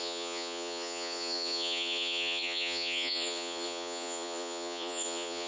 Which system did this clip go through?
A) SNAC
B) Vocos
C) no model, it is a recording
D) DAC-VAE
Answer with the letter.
B